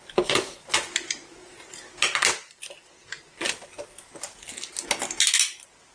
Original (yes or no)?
yes